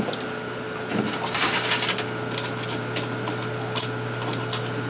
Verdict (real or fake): real